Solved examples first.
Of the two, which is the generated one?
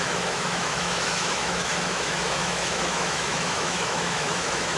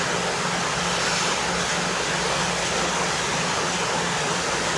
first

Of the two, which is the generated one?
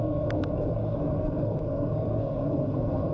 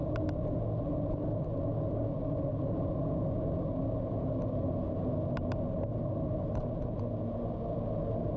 first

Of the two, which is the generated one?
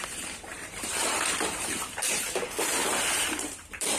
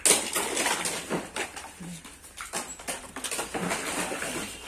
first